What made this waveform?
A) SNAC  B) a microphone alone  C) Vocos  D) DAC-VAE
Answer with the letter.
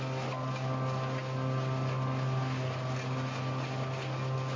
B